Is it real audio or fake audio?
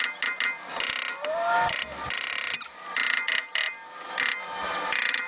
real